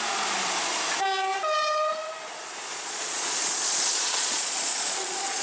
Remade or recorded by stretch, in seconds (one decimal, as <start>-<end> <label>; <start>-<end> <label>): 0.0-2.7 recorded; 2.7-5.4 remade